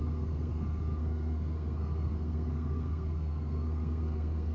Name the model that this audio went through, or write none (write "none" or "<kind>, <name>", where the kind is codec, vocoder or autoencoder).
codec, SNAC